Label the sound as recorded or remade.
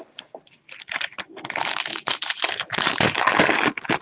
recorded